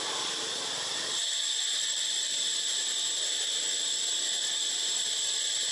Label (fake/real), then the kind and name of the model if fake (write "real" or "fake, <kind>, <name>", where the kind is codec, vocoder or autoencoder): real